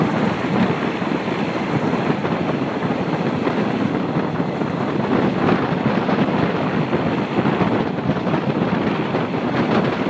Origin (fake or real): real